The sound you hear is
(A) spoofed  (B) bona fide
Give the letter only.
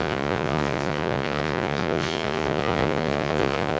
A